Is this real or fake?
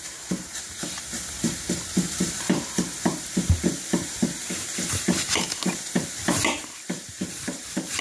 fake